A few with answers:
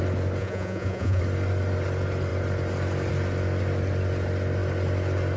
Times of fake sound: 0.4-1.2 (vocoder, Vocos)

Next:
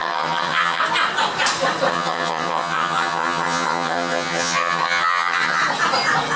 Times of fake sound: 0.0-0.8 (vocoder, HiFi-GAN); 1.9-5.6

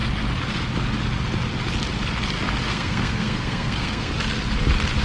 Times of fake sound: 2.7-4.1 (codec, SNAC)

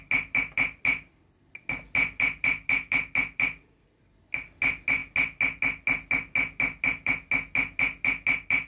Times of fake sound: none

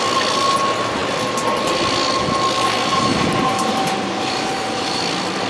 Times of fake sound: 2.9-5.0 (vocoder, BigVGAN v2)